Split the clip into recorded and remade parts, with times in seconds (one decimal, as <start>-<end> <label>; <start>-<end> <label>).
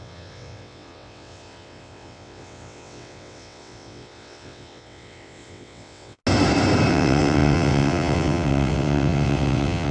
0.0-6.2 remade; 6.2-6.9 recorded; 6.9-9.9 remade